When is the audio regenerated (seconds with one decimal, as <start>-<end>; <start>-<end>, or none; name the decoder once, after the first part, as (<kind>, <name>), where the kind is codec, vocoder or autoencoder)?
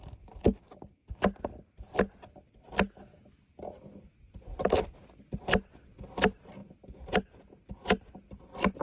none